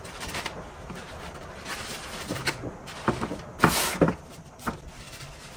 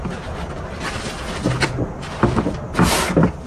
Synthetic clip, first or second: first